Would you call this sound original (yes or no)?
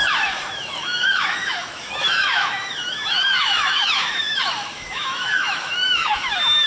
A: no